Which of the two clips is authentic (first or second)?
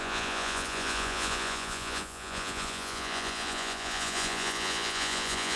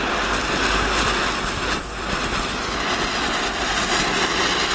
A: second